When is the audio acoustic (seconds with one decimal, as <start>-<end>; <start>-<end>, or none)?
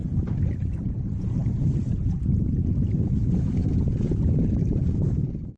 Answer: 3.6-4.7